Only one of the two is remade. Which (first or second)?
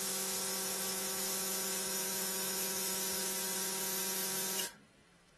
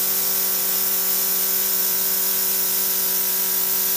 first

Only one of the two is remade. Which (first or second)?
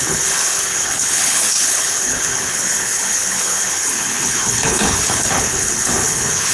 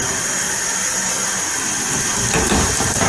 first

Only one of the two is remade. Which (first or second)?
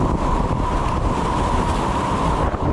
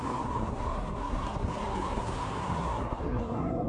second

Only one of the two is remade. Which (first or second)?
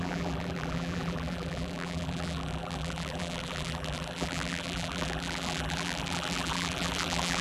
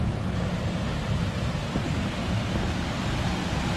first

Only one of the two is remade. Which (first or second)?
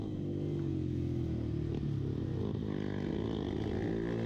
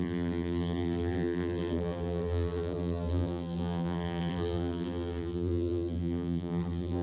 second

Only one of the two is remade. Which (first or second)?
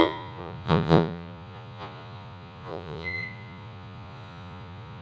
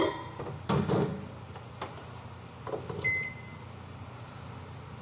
first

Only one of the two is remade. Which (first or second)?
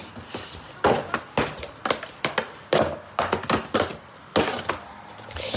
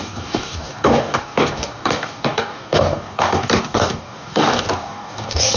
second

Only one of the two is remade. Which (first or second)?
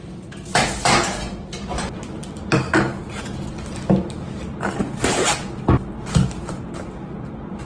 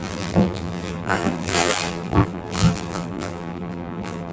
second